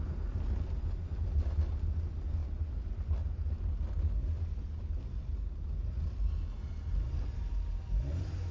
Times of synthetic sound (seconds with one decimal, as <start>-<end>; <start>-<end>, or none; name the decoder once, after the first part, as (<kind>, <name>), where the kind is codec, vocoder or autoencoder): none